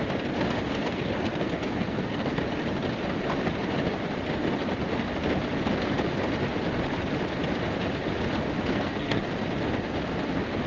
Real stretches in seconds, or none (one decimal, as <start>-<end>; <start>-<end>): 0.0-0.8; 2.4-8.7; 9.3-10.7